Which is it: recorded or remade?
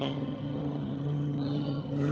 remade